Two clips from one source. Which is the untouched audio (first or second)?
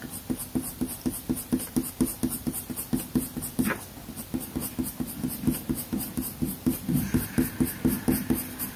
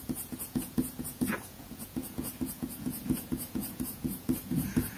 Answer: first